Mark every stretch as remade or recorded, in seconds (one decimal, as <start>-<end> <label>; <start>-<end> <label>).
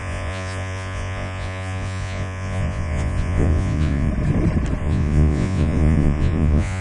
0.0-4.1 remade; 4.1-4.8 recorded; 4.8-6.8 remade